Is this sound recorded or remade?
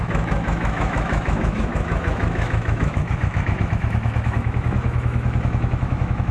remade